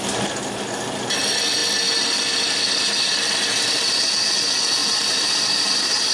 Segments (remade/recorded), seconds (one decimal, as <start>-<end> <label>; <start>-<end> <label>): 0.0-4.8 recorded; 4.8-6.1 remade

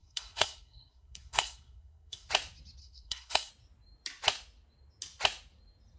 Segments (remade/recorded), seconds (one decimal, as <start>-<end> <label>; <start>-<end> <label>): 0.0-2.3 remade; 2.3-2.8 recorded; 2.8-3.5 remade; 3.5-6.0 recorded